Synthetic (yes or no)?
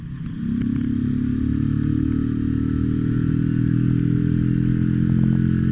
no